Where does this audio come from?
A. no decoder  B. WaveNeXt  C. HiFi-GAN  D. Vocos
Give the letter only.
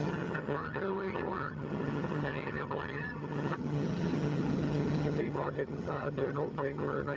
C